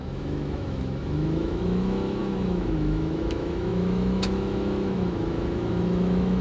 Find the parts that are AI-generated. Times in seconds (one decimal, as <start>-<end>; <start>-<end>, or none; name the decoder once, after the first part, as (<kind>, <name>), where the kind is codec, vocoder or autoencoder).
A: 0.0-6.4 (autoencoder, DAC-VAE)